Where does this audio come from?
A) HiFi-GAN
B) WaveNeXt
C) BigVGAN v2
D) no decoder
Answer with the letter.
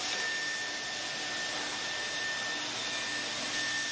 D